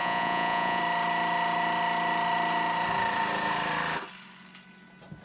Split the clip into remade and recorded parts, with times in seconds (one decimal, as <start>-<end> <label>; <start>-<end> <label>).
0.0-0.8 remade; 0.8-5.2 recorded